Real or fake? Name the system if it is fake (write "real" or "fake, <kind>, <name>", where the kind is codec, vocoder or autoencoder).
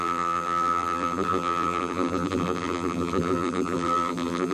fake, vocoder, BigVGAN v2